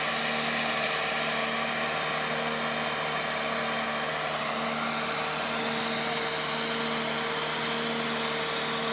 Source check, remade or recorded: recorded